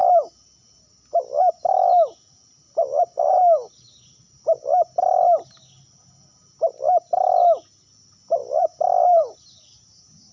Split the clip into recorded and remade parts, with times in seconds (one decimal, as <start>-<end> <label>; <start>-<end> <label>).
0.0-8.4 recorded; 8.4-9.4 remade; 9.4-10.3 recorded